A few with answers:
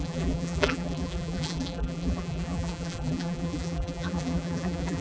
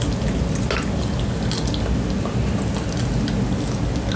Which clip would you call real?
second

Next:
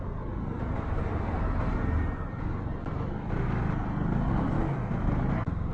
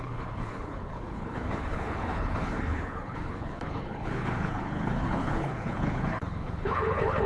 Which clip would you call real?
first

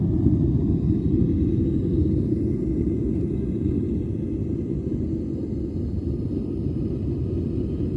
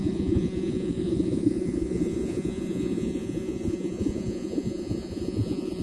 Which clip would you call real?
first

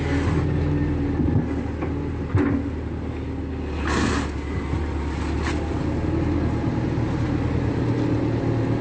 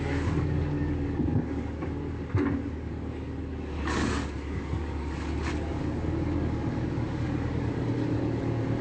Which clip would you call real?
first